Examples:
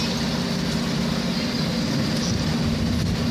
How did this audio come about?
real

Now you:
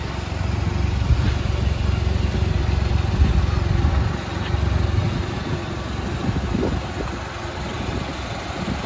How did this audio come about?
real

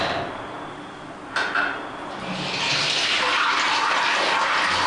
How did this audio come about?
real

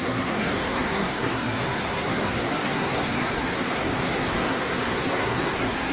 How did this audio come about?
fake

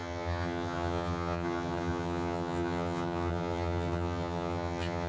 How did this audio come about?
fake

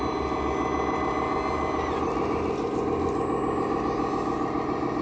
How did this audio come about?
real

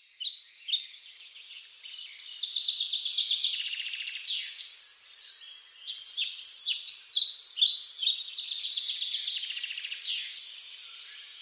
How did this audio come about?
real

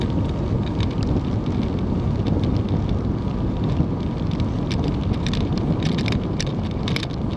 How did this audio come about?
real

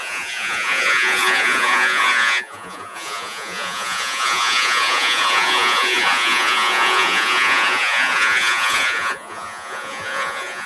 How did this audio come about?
fake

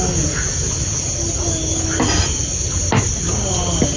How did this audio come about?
real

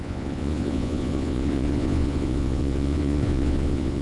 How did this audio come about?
fake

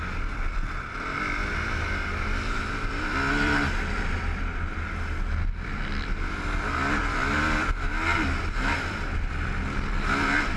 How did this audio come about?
real